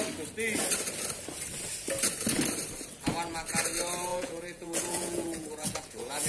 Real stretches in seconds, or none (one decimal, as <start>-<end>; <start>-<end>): 0.0-4.1

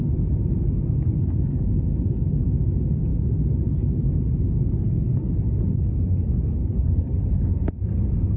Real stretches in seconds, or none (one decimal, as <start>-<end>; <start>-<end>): 0.0-4.7; 7.5-8.4

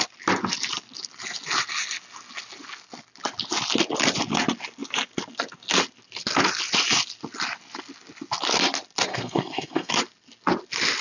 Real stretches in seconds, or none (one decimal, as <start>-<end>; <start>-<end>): 0.0-9.1; 9.9-11.0

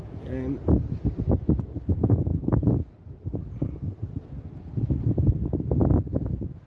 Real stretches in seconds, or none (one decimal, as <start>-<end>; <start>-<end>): 0.0-6.7

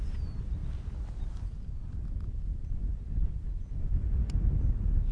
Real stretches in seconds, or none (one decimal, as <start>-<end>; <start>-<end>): 0.0-5.1

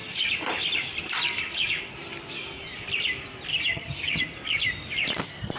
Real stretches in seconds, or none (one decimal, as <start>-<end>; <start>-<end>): 0.0-3.5; 4.2-5.6